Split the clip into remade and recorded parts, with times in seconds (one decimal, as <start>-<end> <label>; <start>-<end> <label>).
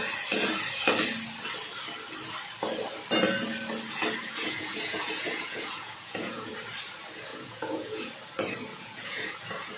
0.0-4.2 recorded; 4.2-6.5 remade; 6.5-7.3 recorded; 7.3-8.1 remade; 8.1-8.7 recorded; 8.7-9.8 remade